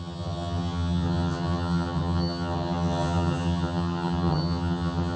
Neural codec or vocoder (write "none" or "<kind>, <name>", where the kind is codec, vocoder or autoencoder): vocoder, HiFi-GAN